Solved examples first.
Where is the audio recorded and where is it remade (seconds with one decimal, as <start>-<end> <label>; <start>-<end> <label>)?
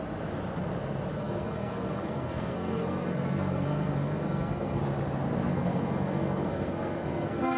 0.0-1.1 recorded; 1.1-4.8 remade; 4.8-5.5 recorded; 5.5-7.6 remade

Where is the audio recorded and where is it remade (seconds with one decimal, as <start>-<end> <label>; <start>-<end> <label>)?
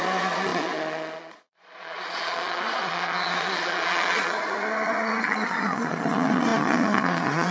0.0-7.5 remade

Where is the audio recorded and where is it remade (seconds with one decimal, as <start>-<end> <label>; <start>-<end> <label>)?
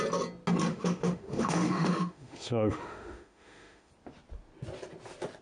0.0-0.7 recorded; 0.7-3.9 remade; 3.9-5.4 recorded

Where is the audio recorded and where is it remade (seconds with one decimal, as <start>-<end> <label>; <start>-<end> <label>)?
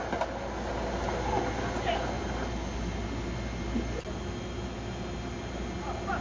0.0-6.2 recorded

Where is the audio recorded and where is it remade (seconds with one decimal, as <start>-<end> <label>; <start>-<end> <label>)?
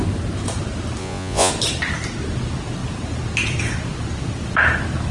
0.0-1.0 recorded; 1.0-1.5 remade; 1.5-5.1 recorded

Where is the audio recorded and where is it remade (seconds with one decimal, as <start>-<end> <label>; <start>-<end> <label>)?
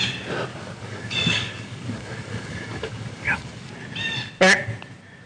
0.0-0.5 recorded; 0.5-3.7 remade; 3.7-5.3 recorded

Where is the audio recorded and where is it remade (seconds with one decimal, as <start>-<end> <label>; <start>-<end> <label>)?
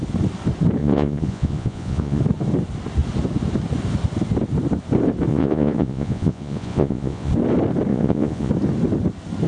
0.0-0.8 recorded; 0.8-2.2 remade; 2.2-5.3 recorded; 5.3-7.3 remade; 7.3-7.9 recorded; 7.9-8.5 remade; 8.5-9.5 recorded